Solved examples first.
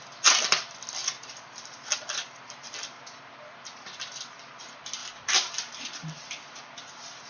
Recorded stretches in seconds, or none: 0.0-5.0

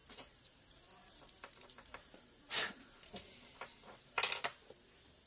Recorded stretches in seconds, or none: 0.6-1.0; 4.2-5.3

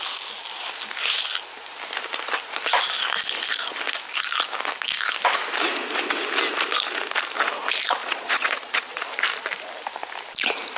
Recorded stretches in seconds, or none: 0.0-8.0; 9.0-10.8

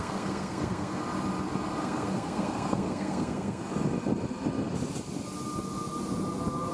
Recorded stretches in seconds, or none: 1.0-1.8; 3.6-6.7

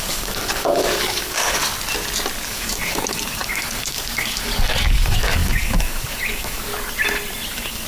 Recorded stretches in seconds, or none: 1.6-2.4; 6.7-7.5

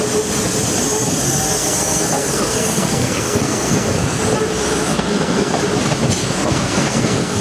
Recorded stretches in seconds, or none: 0.0-1.6; 4.2-4.9; 5.6-6.2

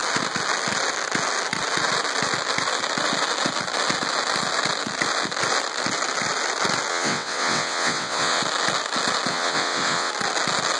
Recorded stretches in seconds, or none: 0.0-6.9; 8.4-9.3; 10.1-10.8

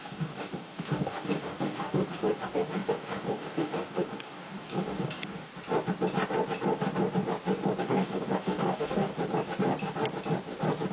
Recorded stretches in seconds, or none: 5.5-7.8; 9.1-10.9